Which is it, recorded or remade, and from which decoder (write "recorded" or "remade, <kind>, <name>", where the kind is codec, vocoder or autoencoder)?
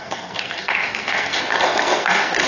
remade, codec, SNAC